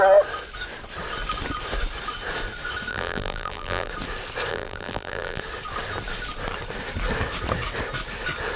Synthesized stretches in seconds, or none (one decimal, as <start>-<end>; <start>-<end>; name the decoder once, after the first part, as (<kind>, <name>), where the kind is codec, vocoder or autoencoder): 2.9-3.9 (vocoder, BigVGAN v2); 4.5-5.4